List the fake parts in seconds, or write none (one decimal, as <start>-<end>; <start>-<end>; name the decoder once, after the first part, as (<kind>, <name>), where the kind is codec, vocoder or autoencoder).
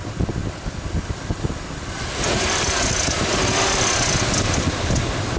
none